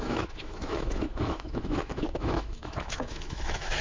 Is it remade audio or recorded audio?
remade